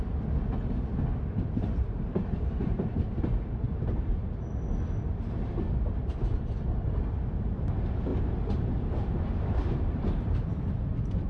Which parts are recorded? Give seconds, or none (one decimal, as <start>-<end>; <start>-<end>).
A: 0.0-1.3; 3.0-8.1; 10.7-11.3